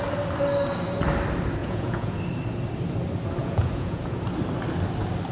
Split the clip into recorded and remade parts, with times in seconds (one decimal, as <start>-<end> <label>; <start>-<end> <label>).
0.0-1.6 recorded; 1.6-2.2 remade; 2.2-3.4 recorded; 3.4-4.2 remade; 4.2-5.3 recorded